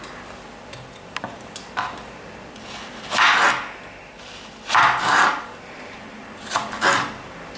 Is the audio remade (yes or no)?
no